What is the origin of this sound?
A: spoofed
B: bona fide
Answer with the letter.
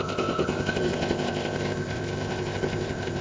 A